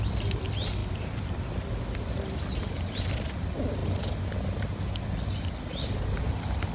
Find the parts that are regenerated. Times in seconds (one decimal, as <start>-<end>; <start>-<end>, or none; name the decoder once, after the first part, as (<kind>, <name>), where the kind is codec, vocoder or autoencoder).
none